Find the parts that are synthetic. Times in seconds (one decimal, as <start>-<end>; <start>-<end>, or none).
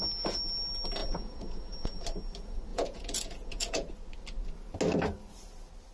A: 1.0-2.0; 2.7-3.9